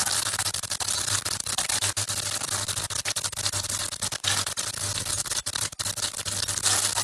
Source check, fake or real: real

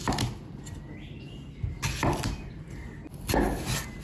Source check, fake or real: real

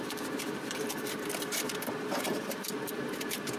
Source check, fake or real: real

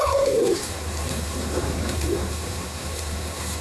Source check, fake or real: fake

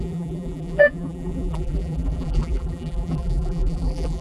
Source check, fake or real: fake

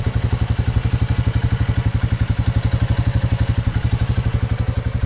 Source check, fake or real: real